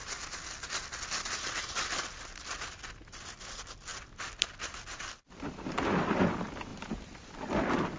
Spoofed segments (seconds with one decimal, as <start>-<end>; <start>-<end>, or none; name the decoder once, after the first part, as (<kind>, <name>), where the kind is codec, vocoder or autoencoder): 6.7-7.5 (vocoder, BigVGAN v2)